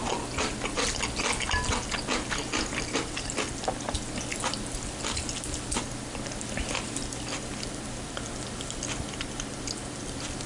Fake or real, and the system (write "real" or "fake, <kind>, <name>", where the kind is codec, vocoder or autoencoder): real